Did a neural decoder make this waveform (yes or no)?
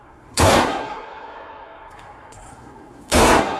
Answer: yes